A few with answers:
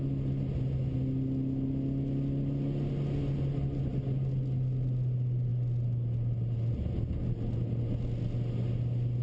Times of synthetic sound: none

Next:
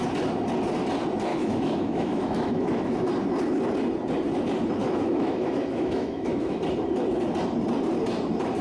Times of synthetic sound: 1.3-3.1; 4.8-6.6

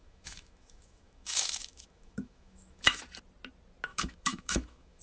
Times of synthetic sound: 0.0-3.0; 3.9-5.0

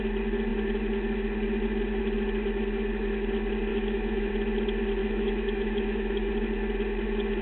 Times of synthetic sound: 3.7-4.3; 5.0-6.3

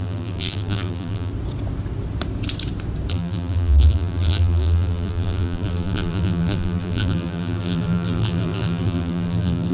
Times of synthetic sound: 0.0-1.3; 3.1-9.7

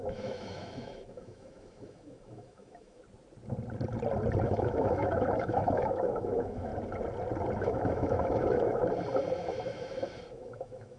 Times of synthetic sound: 0.0-3.0; 4.4-6.7; 7.6-8.8; 9.4-11.0

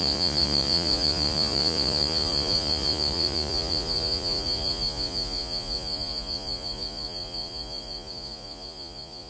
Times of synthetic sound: 0.0-9.3